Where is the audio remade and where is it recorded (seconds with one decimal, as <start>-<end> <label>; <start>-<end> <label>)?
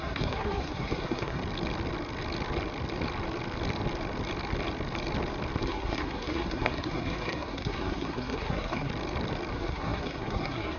0.0-1.4 remade; 1.4-5.6 recorded; 5.6-8.9 remade; 8.9-9.5 recorded; 9.5-10.8 remade